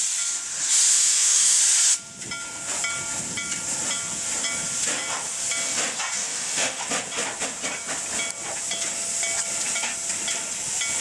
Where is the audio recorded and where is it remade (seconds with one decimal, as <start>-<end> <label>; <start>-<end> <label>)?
0.0-0.9 recorded; 0.9-1.6 remade; 1.6-6.2 recorded; 6.2-6.8 remade; 6.8-11.0 recorded